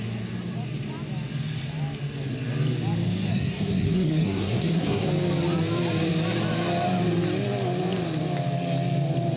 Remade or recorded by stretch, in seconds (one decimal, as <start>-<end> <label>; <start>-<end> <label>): 0.0-3.3 recorded; 3.3-5.1 remade; 5.1-9.4 recorded